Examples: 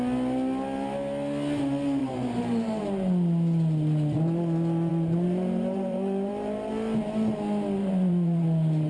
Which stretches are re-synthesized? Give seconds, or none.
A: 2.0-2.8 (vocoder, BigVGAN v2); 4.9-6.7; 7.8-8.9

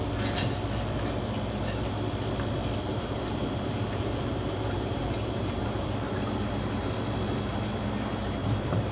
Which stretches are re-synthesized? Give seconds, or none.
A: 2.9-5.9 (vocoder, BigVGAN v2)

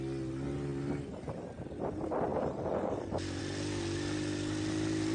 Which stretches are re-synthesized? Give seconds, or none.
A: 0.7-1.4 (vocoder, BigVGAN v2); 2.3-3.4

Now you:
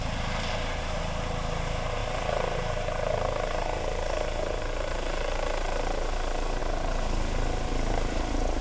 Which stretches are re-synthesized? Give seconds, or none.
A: 0.0-8.6 (vocoder, BigVGAN v2)